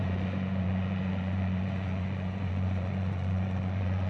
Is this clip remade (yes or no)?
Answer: yes